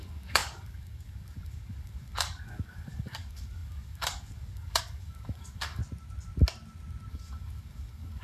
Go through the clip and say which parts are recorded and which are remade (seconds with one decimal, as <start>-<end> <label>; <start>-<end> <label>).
0.0-5.8 remade; 5.8-7.1 recorded; 7.1-8.2 remade